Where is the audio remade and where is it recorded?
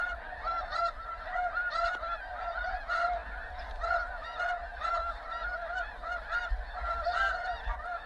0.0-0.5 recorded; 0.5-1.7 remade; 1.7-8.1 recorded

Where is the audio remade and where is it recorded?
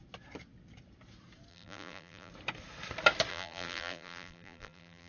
0.0-1.5 recorded; 1.5-2.3 remade; 2.3-3.3 recorded; 3.3-5.1 remade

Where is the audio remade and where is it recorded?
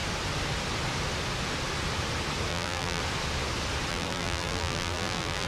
0.0-2.5 recorded; 2.5-3.0 remade; 3.0-3.9 recorded; 3.9-5.5 remade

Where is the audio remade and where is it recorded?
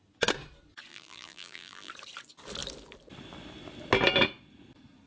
0.0-0.9 recorded; 0.9-1.9 remade; 1.9-5.1 recorded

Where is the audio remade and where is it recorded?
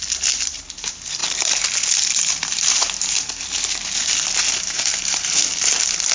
0.0-6.1 recorded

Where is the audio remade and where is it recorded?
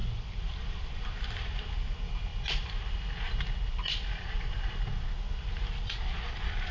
0.0-2.3 remade; 2.3-6.3 recorded; 6.3-6.7 remade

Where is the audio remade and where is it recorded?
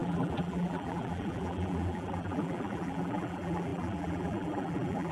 0.0-5.1 remade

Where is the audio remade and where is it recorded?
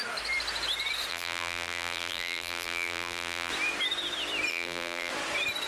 0.0-1.1 recorded; 1.1-3.5 remade; 3.5-4.5 recorded; 4.5-5.1 remade; 5.1-5.7 recorded